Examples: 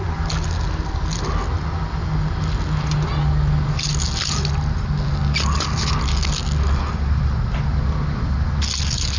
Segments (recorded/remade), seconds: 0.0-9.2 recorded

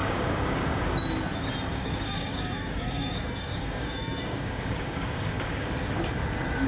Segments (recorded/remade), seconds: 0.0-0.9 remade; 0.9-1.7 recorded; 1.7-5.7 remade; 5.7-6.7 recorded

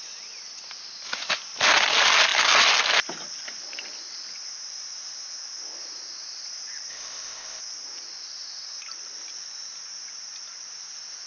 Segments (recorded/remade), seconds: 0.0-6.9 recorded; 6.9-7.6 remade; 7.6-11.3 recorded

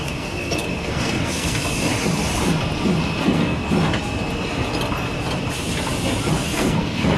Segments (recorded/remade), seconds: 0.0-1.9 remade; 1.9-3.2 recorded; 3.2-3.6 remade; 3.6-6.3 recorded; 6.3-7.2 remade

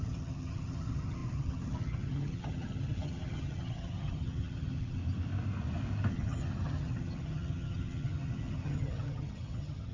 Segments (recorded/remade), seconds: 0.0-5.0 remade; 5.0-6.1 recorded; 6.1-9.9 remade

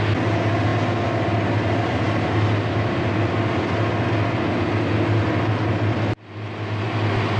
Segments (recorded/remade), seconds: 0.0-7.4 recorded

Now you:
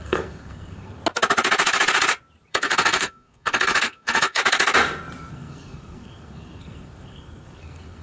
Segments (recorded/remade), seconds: 0.0-1.0 remade; 1.0-2.5 recorded; 2.5-4.4 remade; 4.4-5.3 recorded; 5.3-8.0 remade